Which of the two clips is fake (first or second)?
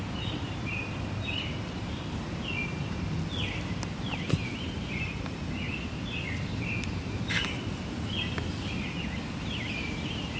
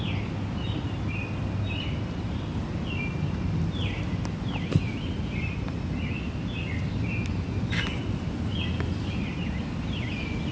first